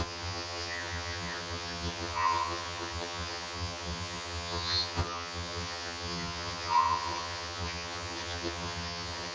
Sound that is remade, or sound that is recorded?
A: remade